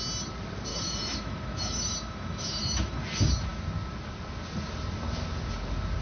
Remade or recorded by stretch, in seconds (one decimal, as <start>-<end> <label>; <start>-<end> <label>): 0.0-0.7 recorded; 0.7-3.0 remade; 3.0-6.0 recorded